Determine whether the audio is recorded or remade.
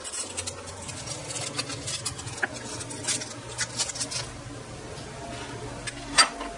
recorded